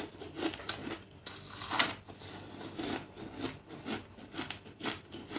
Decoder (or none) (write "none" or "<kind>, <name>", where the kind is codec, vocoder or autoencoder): none